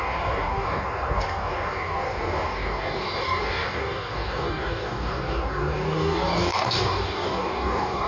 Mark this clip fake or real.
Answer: fake